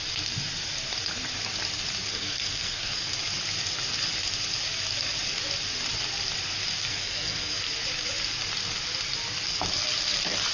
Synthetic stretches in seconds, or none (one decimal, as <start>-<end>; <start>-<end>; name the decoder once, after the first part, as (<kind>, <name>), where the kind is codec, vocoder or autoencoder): 2.1-3.1 (codec, SNAC); 6.9-7.6